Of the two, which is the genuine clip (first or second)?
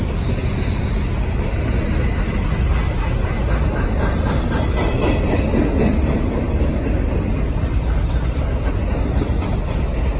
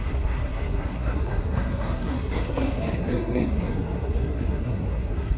first